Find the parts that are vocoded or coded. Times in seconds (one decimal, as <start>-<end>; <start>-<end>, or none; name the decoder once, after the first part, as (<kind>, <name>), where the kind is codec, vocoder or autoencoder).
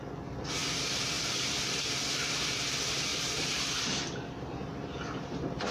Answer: 3.1-3.8 (vocoder, BigVGAN v2)